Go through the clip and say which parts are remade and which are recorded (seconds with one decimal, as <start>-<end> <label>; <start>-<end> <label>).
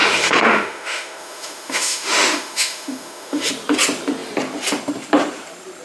0.0-3.5 remade; 3.5-5.8 recorded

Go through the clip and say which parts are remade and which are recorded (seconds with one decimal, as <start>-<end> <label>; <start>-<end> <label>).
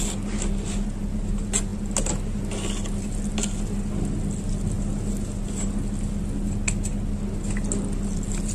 0.0-8.5 recorded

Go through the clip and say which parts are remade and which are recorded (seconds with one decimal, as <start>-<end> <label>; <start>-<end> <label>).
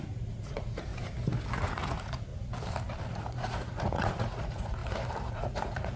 0.0-0.9 remade; 0.9-1.6 recorded; 1.6-2.3 remade; 2.3-3.1 recorded; 3.1-4.8 remade; 4.8-5.3 recorded; 5.3-6.0 remade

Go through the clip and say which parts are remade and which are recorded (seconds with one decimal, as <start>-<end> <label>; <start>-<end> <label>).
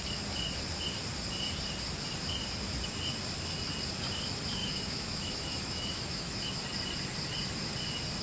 0.0-4.6 recorded; 4.6-6.6 remade; 6.6-8.2 recorded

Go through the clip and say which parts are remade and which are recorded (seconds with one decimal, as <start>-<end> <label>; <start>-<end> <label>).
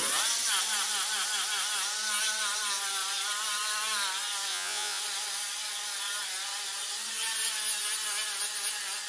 0.0-4.5 recorded; 4.5-5.0 remade; 5.0-9.1 recorded